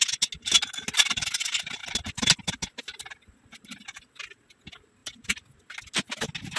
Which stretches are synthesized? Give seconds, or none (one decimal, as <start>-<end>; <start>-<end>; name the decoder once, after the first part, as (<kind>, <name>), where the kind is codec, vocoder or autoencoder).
none